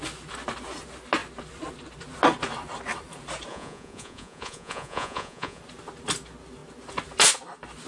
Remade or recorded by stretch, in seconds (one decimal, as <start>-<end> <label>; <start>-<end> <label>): 0.0-3.5 recorded; 3.5-5.6 remade; 5.6-7.9 recorded